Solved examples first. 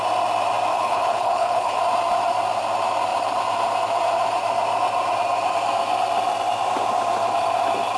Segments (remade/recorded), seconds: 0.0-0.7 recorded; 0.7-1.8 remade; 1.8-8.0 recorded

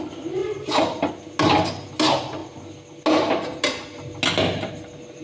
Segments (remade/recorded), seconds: 0.0-0.4 recorded; 0.4-1.1 remade; 1.1-5.2 recorded

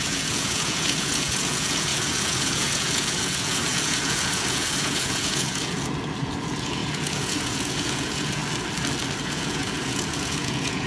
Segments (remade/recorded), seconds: 0.0-8.4 remade; 8.4-9.2 recorded; 9.2-10.9 remade

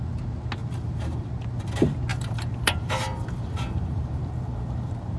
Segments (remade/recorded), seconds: 0.0-0.6 recorded; 0.6-1.3 remade; 1.3-2.1 recorded; 2.1-5.2 remade

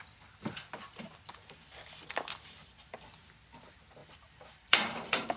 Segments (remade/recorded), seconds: 0.0-4.0 recorded; 4.0-5.4 remade

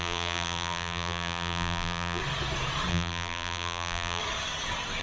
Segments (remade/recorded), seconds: 0.0-2.2 remade; 2.2-2.9 recorded; 2.9-4.2 remade; 4.2-5.0 recorded